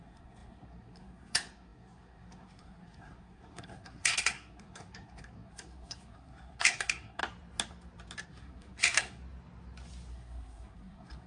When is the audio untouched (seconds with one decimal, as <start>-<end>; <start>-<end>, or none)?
7.2-8.2; 9.2-10.1